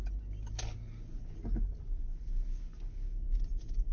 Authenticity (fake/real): real